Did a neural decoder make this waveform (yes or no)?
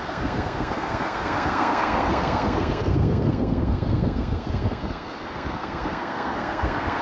yes